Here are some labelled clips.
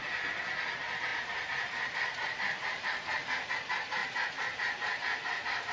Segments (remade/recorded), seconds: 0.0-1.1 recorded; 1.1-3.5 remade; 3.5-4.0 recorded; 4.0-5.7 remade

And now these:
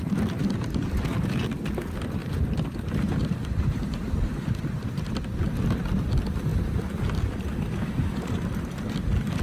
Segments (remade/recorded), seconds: 0.0-2.2 recorded; 2.2-5.2 remade; 5.2-9.4 recorded

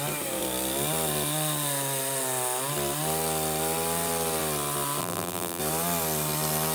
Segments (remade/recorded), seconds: 0.0-5.0 recorded; 5.0-5.6 remade; 5.6-6.7 recorded